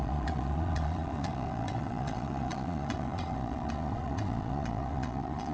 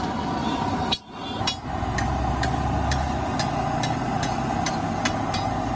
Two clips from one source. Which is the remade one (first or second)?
first